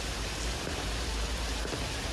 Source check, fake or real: real